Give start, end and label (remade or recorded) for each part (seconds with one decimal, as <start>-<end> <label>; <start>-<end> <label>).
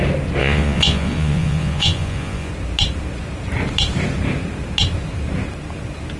0.0-0.4 recorded; 0.4-2.5 remade; 2.5-6.2 recorded